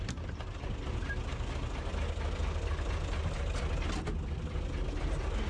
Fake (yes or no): no